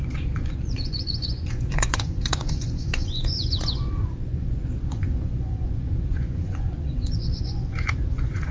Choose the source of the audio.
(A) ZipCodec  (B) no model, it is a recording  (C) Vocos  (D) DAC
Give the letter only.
C